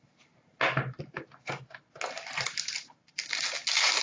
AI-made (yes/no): no